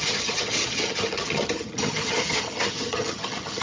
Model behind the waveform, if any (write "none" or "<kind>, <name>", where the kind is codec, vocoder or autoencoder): vocoder, HiFi-GAN